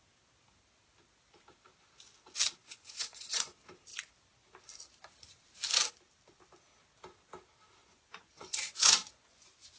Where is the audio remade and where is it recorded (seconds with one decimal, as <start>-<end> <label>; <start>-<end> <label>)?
0.0-2.6 recorded; 2.6-3.5 remade; 3.5-7.8 recorded; 7.8-9.8 remade